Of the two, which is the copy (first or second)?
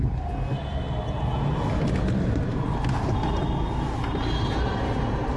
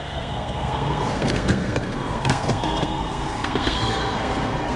second